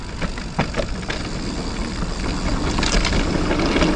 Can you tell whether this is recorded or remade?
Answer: recorded